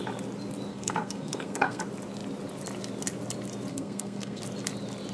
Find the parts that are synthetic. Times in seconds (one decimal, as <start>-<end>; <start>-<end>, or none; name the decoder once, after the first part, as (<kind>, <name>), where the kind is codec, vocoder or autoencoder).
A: 0.7-1.8 (codec, SNAC); 3.7-4.4